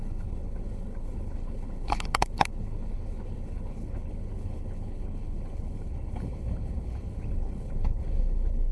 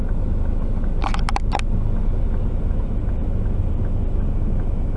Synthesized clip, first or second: first